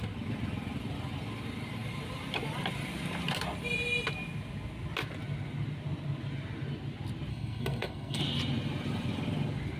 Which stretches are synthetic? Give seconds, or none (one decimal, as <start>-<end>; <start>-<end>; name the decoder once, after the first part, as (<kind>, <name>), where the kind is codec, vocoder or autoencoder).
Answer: 7.3-8.2 (codec, SNAC)